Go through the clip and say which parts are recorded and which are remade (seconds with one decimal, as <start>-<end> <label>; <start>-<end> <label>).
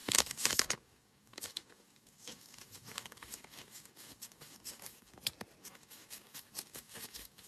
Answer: 0.0-5.1 remade; 5.1-5.6 recorded; 5.6-7.5 remade